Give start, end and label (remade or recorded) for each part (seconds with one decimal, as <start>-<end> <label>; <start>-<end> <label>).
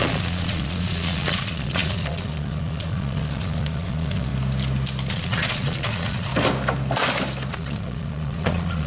0.0-4.3 remade; 4.3-5.1 recorded; 5.1-6.3 remade; 6.3-7.5 recorded; 7.5-8.9 remade